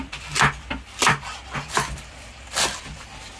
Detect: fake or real real